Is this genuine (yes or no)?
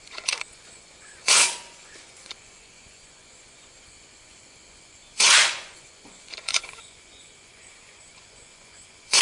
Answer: no